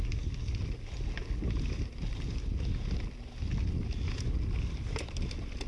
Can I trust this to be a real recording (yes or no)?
yes